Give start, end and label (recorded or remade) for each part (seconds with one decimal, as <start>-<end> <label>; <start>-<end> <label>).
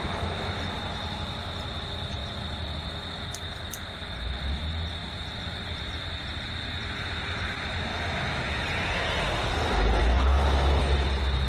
0.0-7.9 recorded; 7.9-8.4 remade; 8.4-10.0 recorded; 10.0-10.8 remade; 10.8-11.5 recorded